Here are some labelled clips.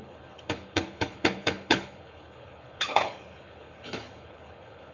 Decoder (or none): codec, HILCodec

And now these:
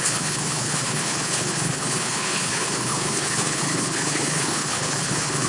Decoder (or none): codec, HILCodec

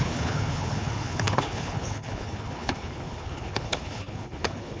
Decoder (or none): codec, HILCodec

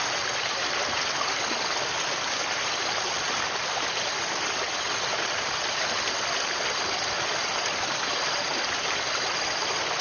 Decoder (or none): none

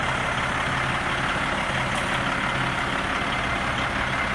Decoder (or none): none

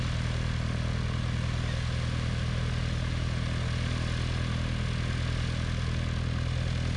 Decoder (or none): none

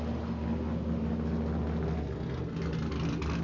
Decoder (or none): none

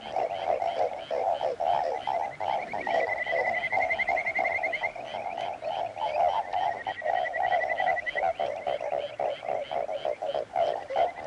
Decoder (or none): none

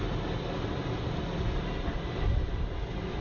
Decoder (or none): none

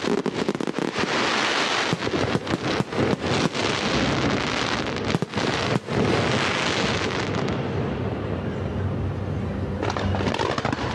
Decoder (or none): none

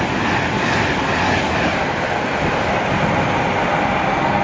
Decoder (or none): none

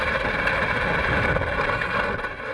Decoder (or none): none